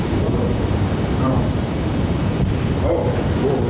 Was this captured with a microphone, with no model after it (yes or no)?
no